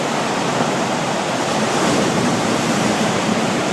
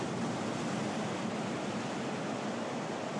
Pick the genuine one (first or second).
second